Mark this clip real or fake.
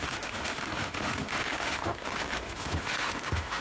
fake